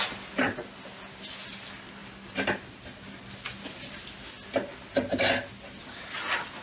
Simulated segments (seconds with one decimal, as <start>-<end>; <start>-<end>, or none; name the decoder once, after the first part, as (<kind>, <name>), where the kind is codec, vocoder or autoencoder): none